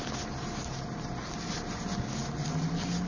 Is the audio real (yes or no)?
yes